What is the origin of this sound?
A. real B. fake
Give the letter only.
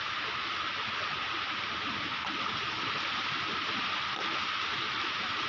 A